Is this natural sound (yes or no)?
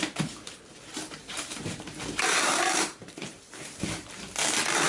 no